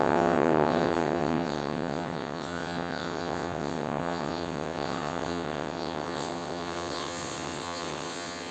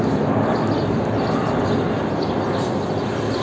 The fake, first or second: first